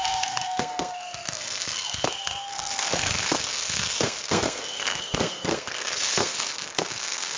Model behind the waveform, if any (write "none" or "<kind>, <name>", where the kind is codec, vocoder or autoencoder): codec, SNAC